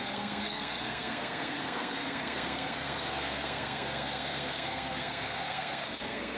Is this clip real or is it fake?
fake